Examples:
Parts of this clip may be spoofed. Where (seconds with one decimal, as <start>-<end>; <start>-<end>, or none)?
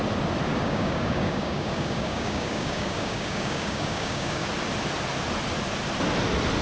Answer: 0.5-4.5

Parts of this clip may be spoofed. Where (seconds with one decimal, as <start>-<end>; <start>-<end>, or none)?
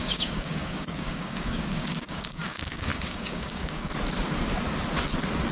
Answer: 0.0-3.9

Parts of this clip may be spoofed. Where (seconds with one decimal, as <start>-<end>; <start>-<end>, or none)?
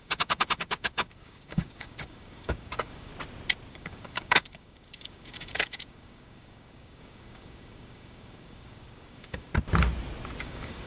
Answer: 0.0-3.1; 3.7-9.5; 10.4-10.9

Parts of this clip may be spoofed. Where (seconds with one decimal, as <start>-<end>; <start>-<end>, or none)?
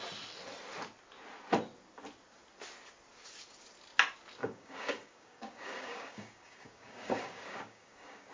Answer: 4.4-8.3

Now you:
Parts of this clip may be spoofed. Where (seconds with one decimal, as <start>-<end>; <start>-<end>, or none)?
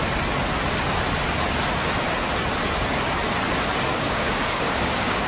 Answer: 3.9-5.3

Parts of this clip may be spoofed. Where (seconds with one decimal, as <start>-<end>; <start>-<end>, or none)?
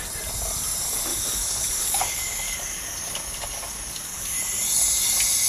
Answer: 1.1-4.4